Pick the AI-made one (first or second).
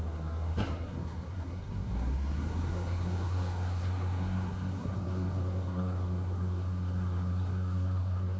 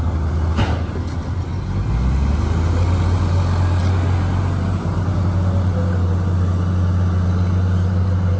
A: first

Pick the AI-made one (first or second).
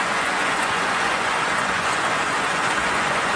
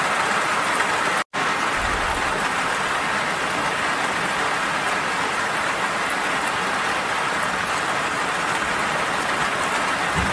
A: first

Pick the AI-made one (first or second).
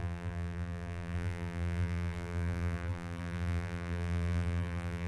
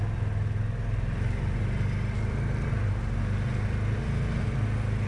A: first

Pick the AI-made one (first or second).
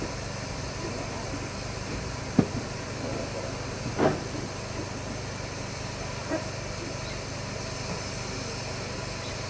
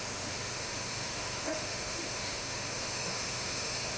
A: second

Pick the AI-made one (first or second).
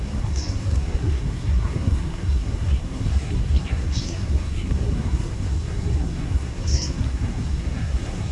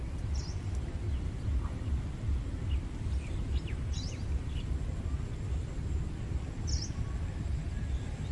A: first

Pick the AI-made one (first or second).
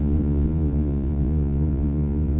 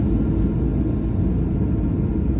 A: first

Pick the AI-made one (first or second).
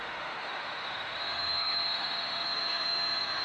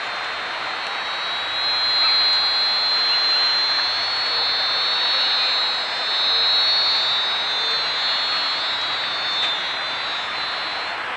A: first